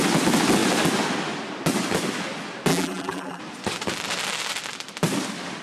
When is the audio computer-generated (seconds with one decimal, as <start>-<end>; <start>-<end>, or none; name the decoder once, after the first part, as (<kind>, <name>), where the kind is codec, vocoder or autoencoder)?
2.7-3.4 (vocoder, BigVGAN v2)